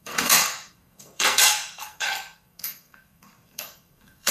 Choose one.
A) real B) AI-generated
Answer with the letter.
B